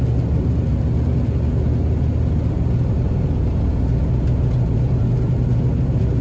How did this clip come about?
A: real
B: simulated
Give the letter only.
A